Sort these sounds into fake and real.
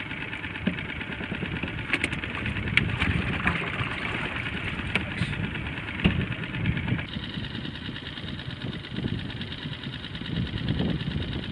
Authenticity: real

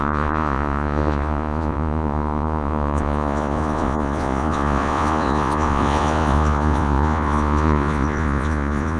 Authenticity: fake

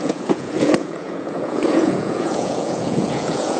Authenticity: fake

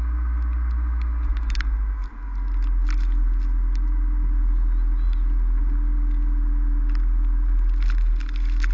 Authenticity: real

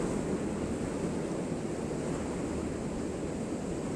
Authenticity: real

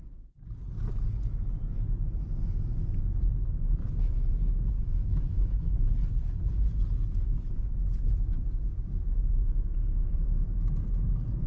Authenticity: fake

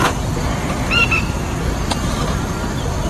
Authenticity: real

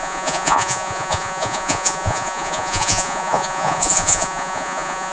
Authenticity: fake